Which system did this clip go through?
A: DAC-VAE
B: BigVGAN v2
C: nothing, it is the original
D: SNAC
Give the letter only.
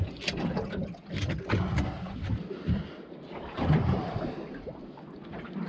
C